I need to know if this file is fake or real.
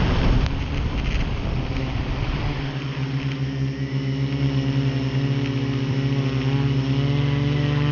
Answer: fake